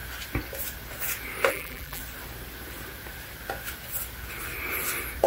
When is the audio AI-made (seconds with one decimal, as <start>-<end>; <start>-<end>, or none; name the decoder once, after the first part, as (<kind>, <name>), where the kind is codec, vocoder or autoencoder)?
1.5-2.0 (vocoder, BigVGAN v2)